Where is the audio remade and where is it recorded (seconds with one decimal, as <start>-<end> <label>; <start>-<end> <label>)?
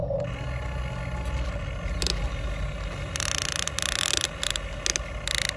0.0-5.6 recorded